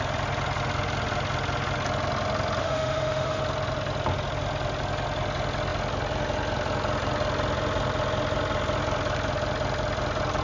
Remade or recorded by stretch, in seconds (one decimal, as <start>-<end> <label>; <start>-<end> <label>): 0.0-2.6 recorded; 2.6-3.4 remade; 3.4-10.4 recorded